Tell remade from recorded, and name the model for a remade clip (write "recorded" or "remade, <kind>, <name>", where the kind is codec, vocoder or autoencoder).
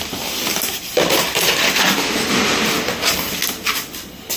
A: recorded